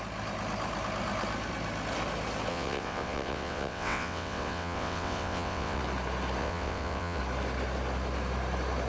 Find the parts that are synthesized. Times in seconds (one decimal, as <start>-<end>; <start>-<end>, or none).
2.5-5.8; 6.4-7.2